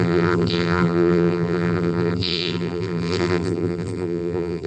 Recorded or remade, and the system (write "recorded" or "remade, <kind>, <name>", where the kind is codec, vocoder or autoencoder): remade, vocoder, BigVGAN v2